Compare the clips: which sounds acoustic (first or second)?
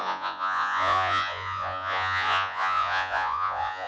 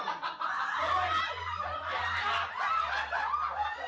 second